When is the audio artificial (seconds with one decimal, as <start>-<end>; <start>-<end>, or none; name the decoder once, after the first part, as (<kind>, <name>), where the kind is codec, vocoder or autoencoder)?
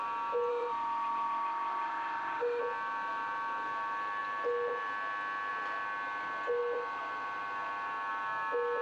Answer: 0.5-2.6 (autoencoder, DAC-VAE)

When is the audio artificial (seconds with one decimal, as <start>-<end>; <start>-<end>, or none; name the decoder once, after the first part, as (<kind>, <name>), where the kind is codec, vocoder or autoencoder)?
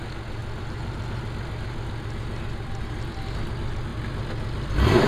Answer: none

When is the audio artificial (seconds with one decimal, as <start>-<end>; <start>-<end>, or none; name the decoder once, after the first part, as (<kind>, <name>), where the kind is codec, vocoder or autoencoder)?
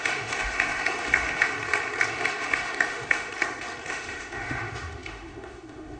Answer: 0.0-1.5 (autoencoder, DAC-VAE); 2.1-3.3; 3.9-6.0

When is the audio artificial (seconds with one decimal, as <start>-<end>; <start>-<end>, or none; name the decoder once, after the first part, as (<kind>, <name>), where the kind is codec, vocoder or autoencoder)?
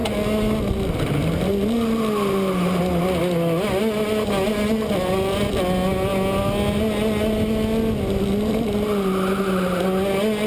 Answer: none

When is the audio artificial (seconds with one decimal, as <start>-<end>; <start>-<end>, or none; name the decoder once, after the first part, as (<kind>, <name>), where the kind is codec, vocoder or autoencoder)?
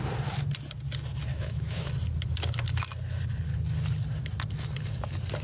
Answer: 1.3-1.9 (autoencoder, DAC-VAE)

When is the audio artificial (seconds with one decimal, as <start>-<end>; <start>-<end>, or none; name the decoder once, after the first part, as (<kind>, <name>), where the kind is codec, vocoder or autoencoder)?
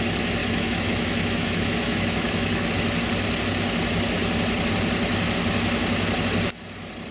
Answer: 0.4-2.7 (autoencoder, DAC-VAE)